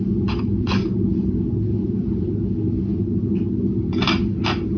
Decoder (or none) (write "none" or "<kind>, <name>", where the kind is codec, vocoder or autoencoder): none